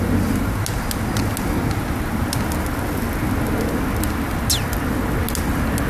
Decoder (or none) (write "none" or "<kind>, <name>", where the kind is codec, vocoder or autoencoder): none